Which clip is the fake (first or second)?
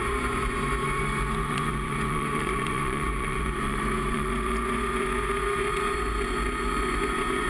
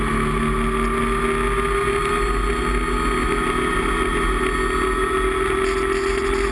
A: first